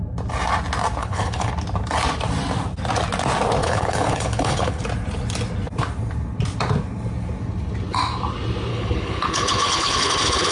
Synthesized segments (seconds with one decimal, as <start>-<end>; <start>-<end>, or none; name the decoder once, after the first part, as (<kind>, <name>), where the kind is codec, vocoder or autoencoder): 1.0-1.5 (codec, HILCodec); 3.6-4.8; 8.7-10.5